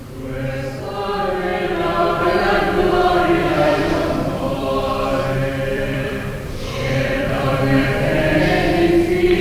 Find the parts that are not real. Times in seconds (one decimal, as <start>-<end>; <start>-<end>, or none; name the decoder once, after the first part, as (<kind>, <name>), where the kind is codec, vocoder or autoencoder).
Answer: 1.5-4.8 (vocoder, BigVGAN v2); 5.7-8.1